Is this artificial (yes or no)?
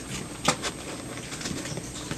no